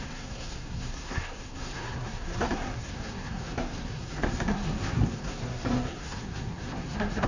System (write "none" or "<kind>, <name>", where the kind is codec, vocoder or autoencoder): codec, SNAC